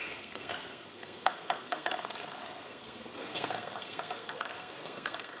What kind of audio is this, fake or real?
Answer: fake